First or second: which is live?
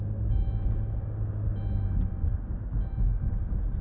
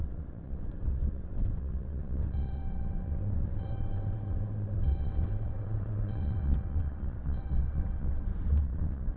first